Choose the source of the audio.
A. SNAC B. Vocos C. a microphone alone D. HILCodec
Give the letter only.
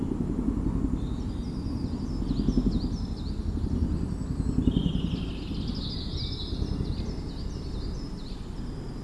C